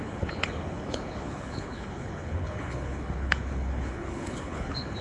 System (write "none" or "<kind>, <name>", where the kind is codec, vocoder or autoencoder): codec, HILCodec